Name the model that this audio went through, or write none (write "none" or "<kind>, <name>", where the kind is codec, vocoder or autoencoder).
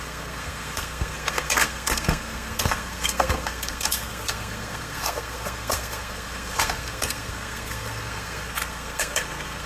codec, SNAC